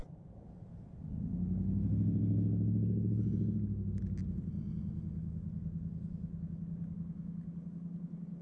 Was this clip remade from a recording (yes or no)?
no